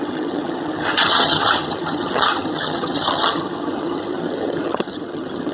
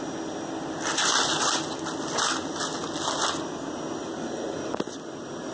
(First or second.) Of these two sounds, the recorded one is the second